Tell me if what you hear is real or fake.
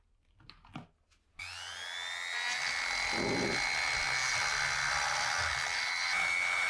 real